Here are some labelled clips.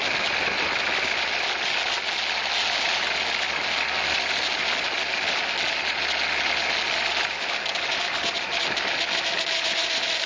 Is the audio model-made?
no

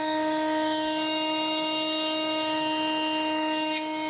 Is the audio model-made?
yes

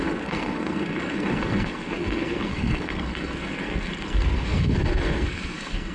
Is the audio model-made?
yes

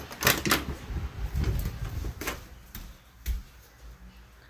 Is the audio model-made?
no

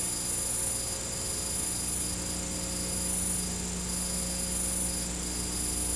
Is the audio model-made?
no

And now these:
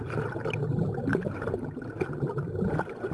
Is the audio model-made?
no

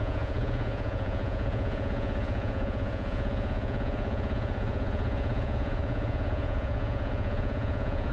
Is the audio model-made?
yes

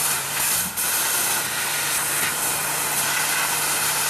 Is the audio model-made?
no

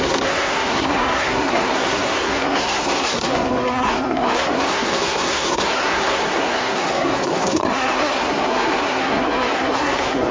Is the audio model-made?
yes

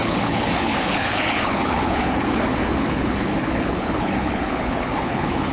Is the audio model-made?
yes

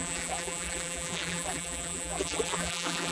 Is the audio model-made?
yes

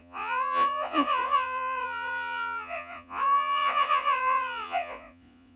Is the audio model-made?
yes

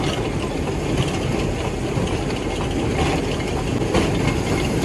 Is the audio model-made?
no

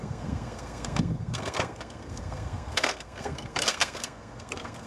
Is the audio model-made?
yes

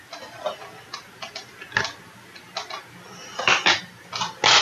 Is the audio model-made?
no